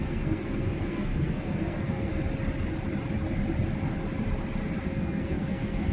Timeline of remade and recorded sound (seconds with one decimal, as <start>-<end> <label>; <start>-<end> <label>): 0.0-2.1 remade; 2.1-4.8 recorded; 4.8-5.9 remade

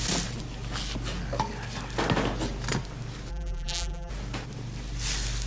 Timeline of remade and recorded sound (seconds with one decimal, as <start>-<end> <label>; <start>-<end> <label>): 0.0-3.3 recorded; 3.3-4.1 remade; 4.1-5.5 recorded

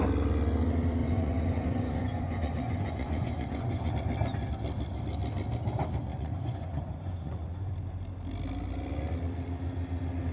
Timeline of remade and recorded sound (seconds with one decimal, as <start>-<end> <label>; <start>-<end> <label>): 0.0-1.0 recorded; 1.0-3.9 remade; 3.9-6.1 recorded; 6.1-7.7 remade; 7.7-10.3 recorded

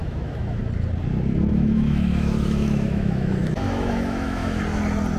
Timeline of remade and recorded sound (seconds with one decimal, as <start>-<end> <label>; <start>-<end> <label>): 0.0-0.6 remade; 0.6-1.5 recorded; 1.5-4.6 remade; 4.6-5.2 recorded